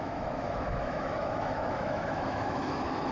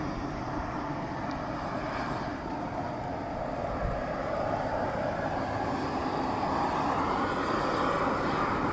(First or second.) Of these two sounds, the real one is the second